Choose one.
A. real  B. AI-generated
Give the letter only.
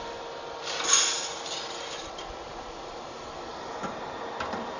A